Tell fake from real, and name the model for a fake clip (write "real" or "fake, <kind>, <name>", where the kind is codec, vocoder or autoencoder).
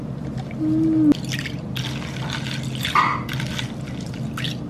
real